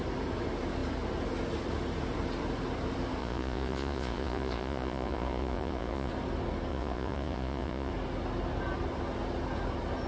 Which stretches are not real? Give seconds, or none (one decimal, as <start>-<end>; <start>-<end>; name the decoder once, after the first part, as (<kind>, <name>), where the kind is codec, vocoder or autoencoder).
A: 3.2-6.1 (vocoder, Vocos); 6.7-7.9